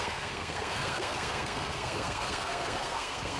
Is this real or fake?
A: fake